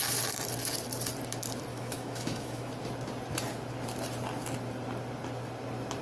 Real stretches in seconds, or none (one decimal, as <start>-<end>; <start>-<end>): 0.0-1.7; 2.7-6.0